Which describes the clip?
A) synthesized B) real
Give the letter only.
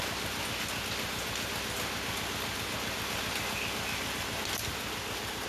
B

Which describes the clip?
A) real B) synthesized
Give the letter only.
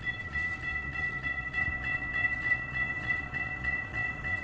B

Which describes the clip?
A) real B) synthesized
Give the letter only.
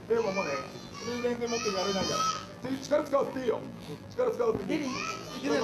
B